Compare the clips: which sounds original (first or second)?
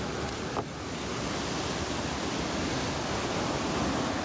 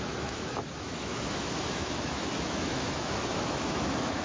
first